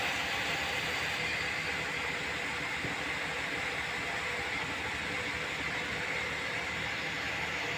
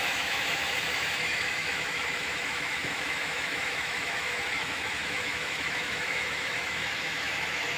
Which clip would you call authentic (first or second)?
first